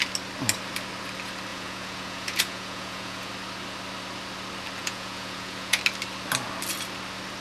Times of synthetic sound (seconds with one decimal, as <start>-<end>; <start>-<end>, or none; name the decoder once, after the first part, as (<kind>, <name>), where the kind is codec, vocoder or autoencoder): 1.5-3.3 (vocoder, Vocos); 4.8-5.8

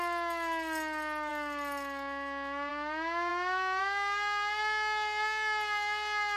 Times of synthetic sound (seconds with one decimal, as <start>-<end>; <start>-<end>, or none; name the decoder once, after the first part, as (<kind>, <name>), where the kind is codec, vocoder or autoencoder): none

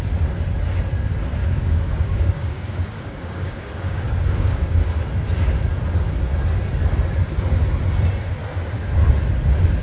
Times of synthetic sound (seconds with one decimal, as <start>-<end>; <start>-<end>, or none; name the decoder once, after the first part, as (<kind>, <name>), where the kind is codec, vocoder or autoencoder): 1.4-4.9 (codec, DAC)

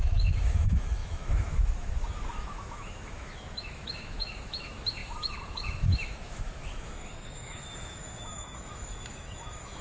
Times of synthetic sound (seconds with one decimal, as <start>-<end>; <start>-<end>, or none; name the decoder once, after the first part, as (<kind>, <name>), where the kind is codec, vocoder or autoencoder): 0.0-9.8 (autoencoder, DAC-VAE)

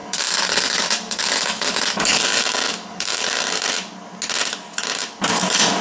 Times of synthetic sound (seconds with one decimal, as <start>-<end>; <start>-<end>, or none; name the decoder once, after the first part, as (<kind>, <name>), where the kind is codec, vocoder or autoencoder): 0.0-3.4 (codec, DAC)

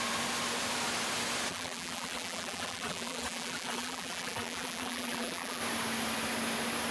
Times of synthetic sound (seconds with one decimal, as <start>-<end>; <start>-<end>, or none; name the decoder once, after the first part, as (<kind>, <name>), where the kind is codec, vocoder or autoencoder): 1.5-5.6 (vocoder, BigVGAN v2)

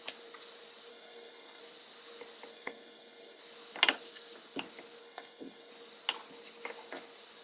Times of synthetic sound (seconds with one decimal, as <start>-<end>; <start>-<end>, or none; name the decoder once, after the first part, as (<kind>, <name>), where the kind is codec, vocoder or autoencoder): 0.9-1.6 (codec, SNAC); 2.5-3.4; 5.0-5.7